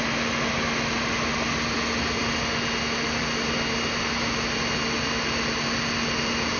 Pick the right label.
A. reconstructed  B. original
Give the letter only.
B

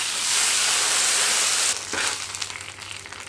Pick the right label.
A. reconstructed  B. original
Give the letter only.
B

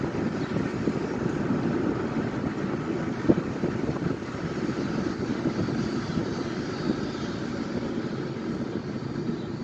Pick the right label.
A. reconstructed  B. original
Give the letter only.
B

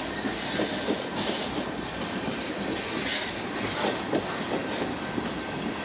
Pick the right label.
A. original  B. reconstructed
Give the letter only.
A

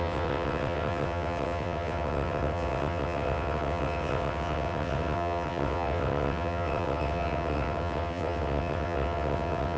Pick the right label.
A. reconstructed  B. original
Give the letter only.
A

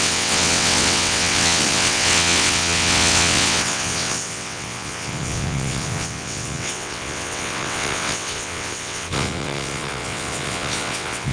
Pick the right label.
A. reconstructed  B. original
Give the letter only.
A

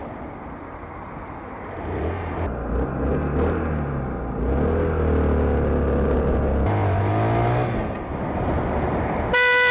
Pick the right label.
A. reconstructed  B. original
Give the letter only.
B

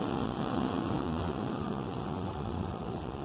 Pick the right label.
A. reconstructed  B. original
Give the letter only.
A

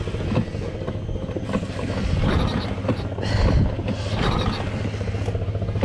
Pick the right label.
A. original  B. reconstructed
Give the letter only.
A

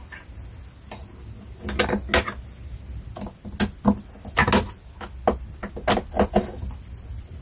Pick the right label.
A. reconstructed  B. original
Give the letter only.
B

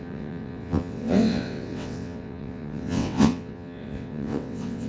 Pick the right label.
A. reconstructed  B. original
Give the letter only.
A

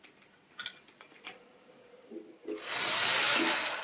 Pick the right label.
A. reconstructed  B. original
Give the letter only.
B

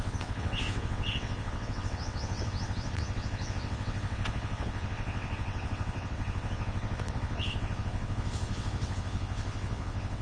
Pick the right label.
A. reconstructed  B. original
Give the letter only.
A